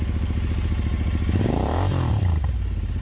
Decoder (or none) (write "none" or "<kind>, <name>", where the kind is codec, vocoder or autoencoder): none